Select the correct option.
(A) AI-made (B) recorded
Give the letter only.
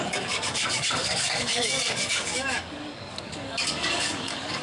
A